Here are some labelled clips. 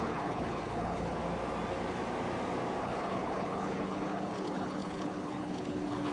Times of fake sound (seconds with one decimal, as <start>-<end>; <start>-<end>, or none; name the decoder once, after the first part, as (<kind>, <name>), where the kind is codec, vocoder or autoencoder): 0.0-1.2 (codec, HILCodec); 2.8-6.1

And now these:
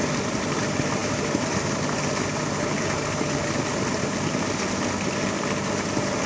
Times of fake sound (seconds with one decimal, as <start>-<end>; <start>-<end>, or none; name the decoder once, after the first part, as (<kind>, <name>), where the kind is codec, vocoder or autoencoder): none

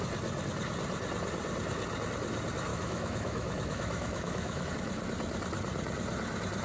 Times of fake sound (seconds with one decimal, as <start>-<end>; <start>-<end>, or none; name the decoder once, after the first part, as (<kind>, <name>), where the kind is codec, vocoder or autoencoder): 2.7-4.7 (autoencoder, DAC-VAE)

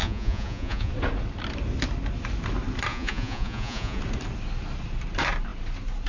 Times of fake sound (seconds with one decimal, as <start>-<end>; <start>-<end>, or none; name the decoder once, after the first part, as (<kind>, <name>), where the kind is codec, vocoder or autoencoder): 0.0-0.9 (vocoder, Vocos); 2.9-4.0

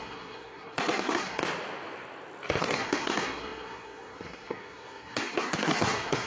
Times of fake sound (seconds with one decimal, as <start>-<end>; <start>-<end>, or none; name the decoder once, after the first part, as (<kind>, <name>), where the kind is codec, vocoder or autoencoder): 0.0-1.4 (codec, SNAC); 2.6-6.3

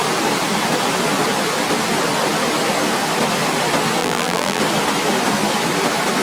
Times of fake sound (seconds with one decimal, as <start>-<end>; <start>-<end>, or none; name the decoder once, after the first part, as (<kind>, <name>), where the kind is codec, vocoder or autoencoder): 4.0-4.6 (vocoder, BigVGAN v2)

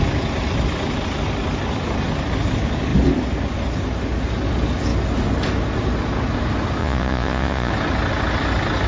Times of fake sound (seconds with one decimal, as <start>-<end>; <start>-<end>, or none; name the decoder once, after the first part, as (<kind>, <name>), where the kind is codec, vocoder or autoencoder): 6.8-7.7 (vocoder, Vocos)

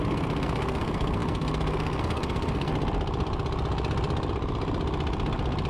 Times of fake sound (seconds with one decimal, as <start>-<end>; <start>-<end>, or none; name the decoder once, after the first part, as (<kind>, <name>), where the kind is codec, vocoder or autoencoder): 0.0-2.7 (codec, SNAC)